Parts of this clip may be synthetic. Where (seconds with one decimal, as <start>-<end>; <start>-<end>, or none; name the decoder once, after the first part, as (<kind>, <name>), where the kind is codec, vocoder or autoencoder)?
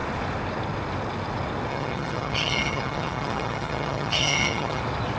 1.7-4.8 (vocoder, HiFi-GAN)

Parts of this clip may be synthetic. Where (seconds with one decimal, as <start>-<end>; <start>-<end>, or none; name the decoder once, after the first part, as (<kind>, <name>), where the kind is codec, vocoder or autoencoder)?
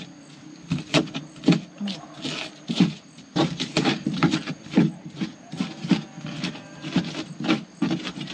3.4-4.3 (vocoder, BigVGAN v2)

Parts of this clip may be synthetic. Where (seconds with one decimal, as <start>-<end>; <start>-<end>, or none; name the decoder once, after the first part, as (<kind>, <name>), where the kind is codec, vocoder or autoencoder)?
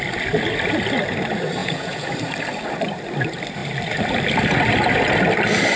1.6-2.1 (vocoder, Vocos)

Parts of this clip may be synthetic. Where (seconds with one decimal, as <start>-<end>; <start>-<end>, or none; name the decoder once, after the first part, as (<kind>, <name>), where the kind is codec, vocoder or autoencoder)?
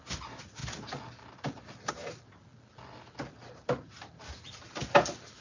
none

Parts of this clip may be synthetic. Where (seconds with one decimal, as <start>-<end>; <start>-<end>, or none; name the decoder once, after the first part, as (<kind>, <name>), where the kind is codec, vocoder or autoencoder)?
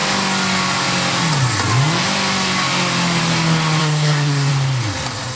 3.8-4.5 (codec, SNAC)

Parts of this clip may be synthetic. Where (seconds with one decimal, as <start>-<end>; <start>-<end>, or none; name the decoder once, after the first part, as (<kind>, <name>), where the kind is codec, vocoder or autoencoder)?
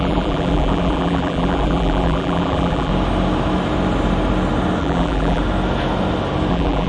0.0-2.9 (vocoder, BigVGAN v2); 4.8-5.4; 6.5-6.9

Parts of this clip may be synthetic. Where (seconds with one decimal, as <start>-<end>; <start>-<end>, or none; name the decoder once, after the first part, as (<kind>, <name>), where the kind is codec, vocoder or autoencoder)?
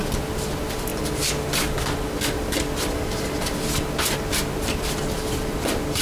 none